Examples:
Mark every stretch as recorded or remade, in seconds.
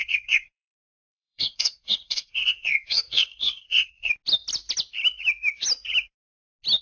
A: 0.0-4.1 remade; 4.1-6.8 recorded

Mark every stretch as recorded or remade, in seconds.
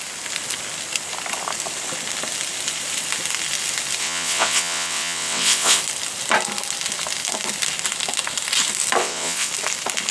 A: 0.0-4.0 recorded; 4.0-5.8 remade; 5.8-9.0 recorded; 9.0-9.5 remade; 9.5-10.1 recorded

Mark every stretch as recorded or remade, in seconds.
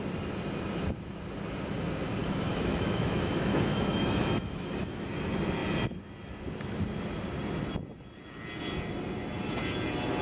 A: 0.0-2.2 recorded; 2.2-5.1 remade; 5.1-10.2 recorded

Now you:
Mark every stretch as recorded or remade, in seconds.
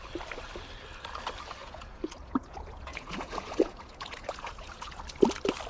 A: 0.0-1.6 recorded; 1.6-5.0 remade; 5.0-5.7 recorded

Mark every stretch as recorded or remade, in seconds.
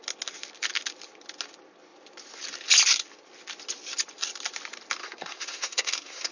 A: 0.0-5.0 recorded; 5.0-6.3 remade